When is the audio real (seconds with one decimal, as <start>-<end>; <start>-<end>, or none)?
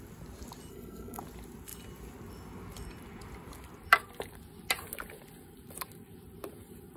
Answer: 0.0-0.7; 1.2-7.0